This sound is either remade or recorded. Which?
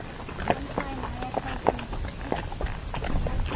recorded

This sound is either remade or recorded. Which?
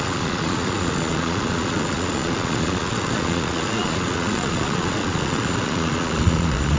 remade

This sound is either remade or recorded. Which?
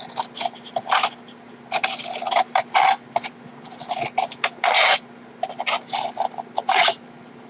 recorded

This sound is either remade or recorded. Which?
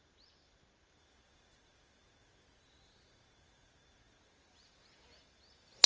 recorded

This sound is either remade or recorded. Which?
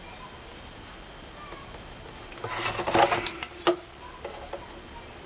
recorded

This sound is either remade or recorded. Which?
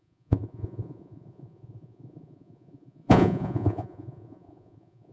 remade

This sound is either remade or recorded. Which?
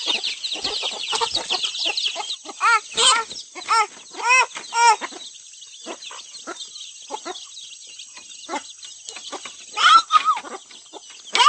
recorded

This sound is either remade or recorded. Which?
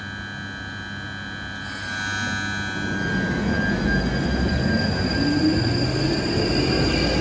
recorded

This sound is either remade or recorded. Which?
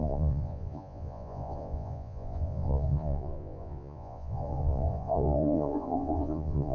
remade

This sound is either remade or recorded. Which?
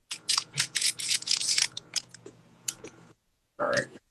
remade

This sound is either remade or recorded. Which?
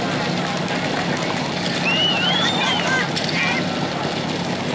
recorded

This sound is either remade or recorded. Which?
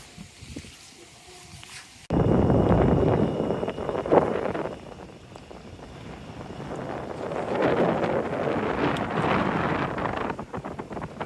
recorded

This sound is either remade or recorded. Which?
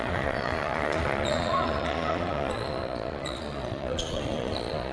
remade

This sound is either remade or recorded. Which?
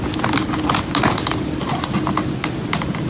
recorded